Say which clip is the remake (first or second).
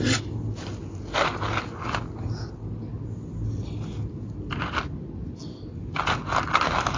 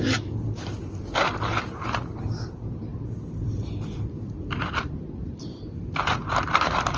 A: second